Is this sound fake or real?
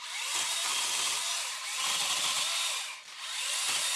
real